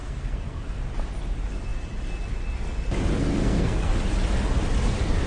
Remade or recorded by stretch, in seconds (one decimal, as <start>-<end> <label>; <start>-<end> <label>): 0.0-0.6 remade; 0.6-3.2 recorded; 3.2-4.0 remade; 4.0-5.3 recorded